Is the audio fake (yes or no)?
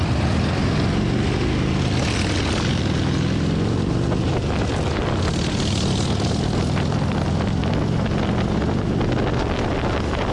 no